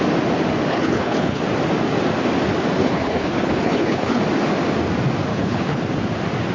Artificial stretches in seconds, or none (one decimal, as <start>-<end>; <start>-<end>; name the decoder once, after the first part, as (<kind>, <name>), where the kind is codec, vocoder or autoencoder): 0.7-1.4 (codec, HILCodec); 2.8-4.2; 5.3-5.8